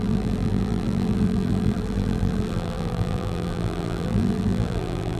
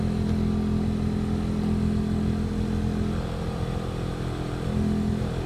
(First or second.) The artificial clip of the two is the first